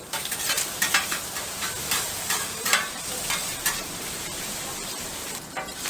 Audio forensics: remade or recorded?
remade